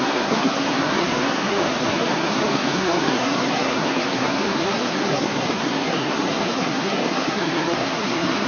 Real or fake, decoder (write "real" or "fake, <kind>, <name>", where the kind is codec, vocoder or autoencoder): fake, codec, SNAC